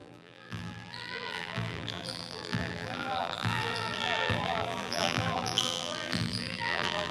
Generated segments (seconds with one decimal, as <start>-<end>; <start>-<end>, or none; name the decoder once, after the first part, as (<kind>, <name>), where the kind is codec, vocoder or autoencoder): 0.0-7.1 (vocoder, BigVGAN v2)